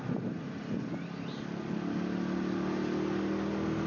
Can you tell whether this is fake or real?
real